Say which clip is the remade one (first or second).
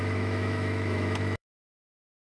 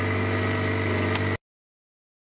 first